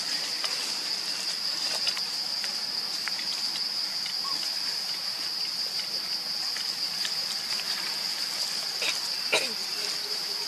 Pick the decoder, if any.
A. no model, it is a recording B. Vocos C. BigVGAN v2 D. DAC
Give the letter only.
A